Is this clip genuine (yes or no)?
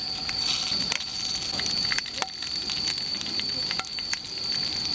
yes